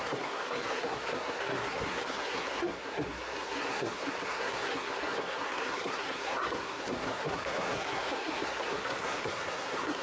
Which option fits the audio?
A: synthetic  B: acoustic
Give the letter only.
A